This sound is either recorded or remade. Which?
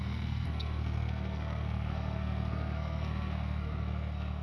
remade